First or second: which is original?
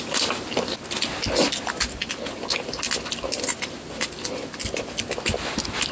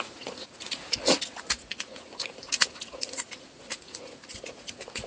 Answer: first